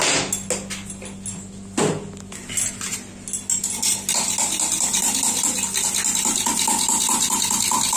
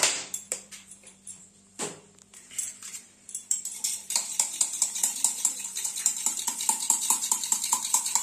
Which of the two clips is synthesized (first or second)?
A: second